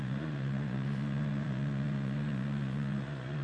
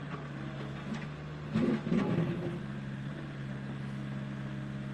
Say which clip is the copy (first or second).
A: first